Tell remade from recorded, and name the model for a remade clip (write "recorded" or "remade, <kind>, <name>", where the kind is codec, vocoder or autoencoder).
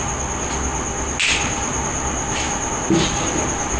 recorded